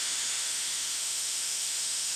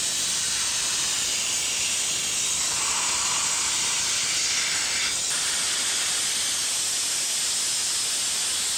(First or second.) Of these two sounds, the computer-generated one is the first